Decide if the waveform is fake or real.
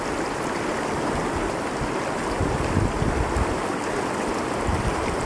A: real